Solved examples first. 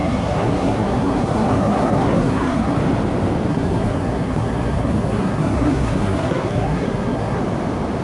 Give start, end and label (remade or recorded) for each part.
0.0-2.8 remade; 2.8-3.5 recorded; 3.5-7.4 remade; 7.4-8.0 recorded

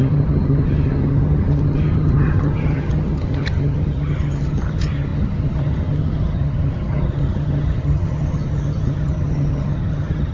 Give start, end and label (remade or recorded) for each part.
0.0-10.3 remade

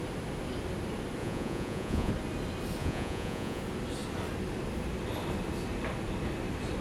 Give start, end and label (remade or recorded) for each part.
0.0-1.2 recorded; 1.2-2.1 remade; 2.1-2.8 recorded; 2.8-3.6 remade; 3.6-6.8 recorded

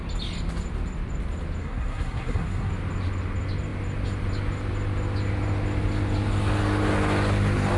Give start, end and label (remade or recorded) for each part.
0.0-1.6 recorded; 1.6-2.7 remade; 2.7-7.8 recorded

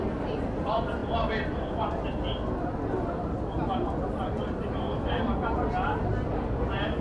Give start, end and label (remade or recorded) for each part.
0.0-1.0 remade; 1.0-5.2 recorded; 5.2-6.1 remade; 6.1-6.6 recorded; 6.6-7.0 remade

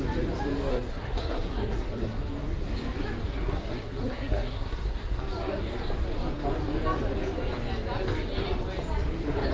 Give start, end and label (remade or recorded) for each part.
0.0-0.7 recorded; 0.7-2.2 remade; 2.2-3.3 recorded; 3.3-5.2 remade; 5.2-9.5 recorded